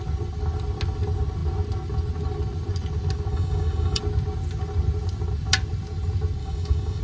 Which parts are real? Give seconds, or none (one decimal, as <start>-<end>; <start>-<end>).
0.0-3.3; 4.0-6.4